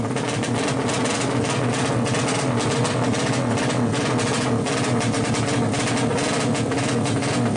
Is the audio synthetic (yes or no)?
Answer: no